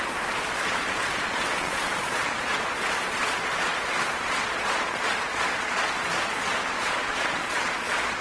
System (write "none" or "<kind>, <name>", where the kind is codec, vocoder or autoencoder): vocoder, Vocos